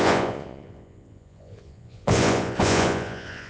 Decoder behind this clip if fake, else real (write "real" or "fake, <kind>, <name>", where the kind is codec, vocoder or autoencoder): fake, vocoder, Vocos